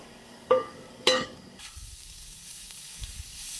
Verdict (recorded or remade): remade